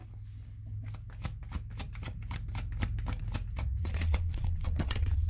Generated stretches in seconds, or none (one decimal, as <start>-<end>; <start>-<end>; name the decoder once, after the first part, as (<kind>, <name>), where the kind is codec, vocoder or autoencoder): 3.8-5.3 (vocoder, Vocos)